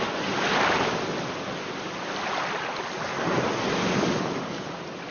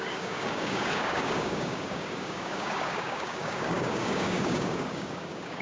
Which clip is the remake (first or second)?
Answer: second